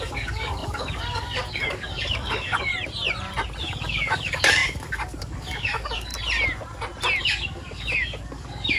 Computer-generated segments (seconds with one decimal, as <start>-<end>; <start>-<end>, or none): 0.0-2.7; 3.6-6.1; 7.2-8.8